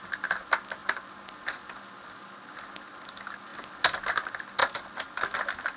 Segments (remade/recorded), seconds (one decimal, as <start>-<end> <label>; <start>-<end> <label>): 0.0-5.8 recorded